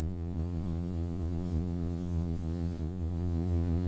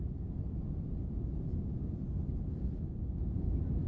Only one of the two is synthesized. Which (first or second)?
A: first